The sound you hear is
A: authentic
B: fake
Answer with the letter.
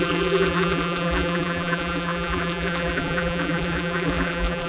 B